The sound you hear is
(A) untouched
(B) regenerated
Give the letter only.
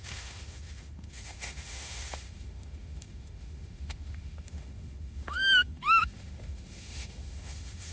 B